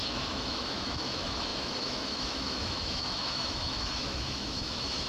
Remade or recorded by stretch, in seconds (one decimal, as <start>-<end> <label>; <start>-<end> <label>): 0.0-5.1 remade